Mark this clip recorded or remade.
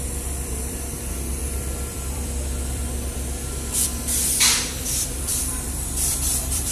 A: remade